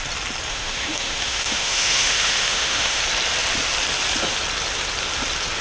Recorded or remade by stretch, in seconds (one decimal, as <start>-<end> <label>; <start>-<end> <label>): 0.0-0.5 recorded; 0.5-3.0 remade; 3.0-5.6 recorded